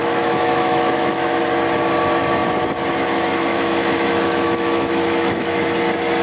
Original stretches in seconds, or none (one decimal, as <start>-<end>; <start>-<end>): 1.4-3.5; 5.6-6.2